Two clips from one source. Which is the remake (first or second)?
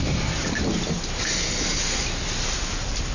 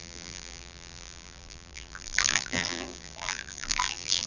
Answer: second